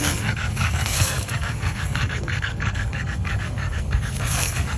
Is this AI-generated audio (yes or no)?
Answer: yes